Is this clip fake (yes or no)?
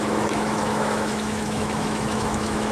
yes